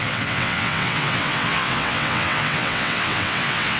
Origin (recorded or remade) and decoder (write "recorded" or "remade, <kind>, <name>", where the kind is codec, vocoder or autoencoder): remade, vocoder, WaveNeXt